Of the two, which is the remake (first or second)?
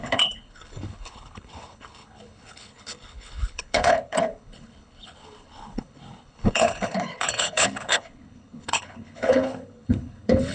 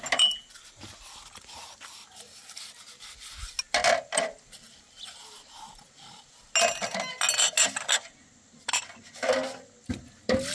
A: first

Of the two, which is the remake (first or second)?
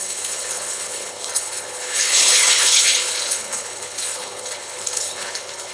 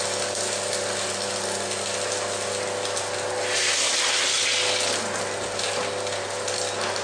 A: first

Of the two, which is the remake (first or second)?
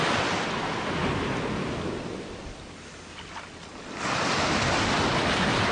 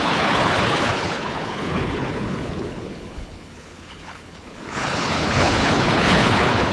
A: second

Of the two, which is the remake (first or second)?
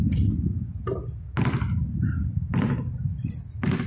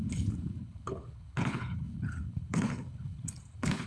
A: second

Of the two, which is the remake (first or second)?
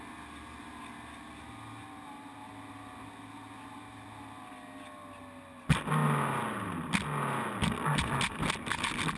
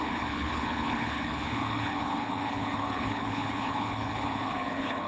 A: second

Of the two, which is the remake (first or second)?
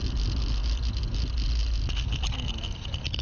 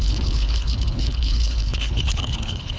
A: second